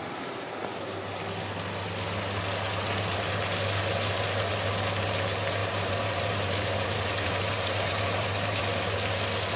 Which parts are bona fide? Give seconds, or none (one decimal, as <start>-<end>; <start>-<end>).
0.0-5.6; 8.6-9.6